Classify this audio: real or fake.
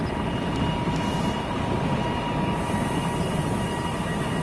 real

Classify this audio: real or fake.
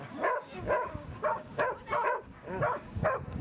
fake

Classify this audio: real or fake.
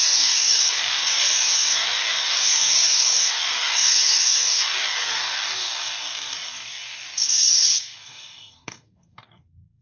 fake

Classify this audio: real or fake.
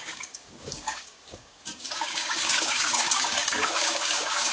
fake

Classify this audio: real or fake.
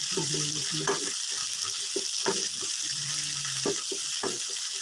real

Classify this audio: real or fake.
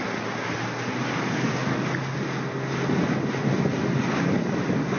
real